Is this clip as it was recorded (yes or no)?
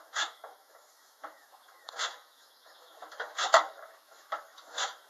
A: no